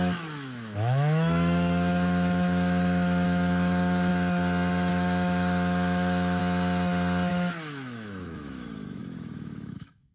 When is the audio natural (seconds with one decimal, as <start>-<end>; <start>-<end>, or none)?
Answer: 4.1-4.9; 6.4-7.3